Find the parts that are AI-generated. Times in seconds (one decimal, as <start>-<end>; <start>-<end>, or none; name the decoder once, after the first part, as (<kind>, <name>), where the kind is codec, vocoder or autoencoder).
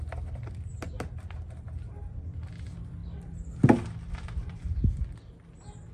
none